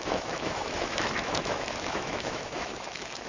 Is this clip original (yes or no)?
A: no